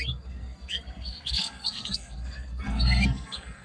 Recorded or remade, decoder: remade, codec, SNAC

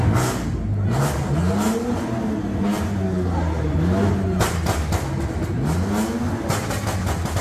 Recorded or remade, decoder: recorded